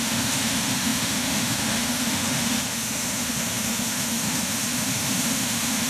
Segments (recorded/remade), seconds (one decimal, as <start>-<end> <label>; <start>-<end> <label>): 0.0-5.9 remade